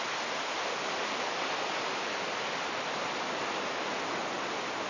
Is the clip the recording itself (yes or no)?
yes